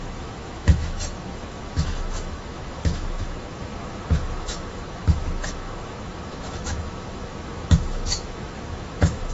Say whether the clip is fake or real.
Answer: fake